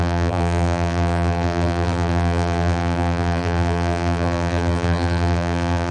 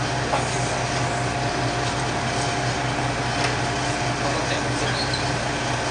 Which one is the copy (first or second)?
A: first